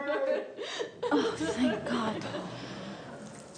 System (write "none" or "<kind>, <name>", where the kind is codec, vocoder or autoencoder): none